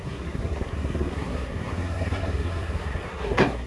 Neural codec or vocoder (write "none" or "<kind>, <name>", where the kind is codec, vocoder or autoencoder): codec, SNAC